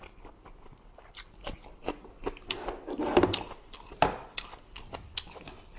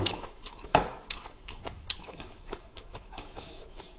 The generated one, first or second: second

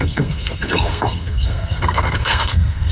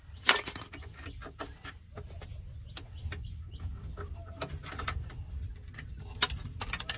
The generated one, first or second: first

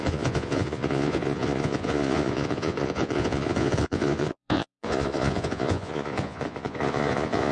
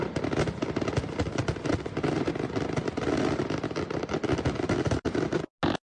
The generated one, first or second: first